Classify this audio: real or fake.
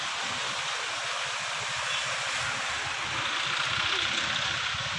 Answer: real